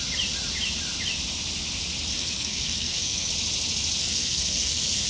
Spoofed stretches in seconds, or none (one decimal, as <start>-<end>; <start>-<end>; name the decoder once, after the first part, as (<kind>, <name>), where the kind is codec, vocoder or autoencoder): 2.1-3.3 (codec, SNAC); 4.0-5.1